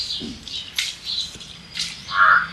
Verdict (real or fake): real